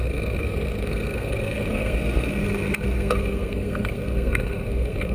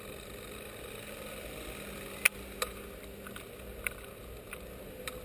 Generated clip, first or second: first